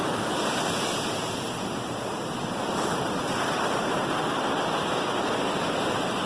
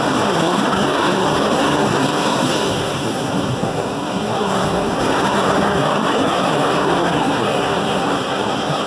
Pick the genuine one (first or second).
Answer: first